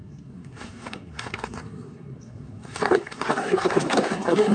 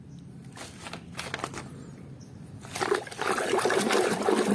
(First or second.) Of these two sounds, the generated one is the first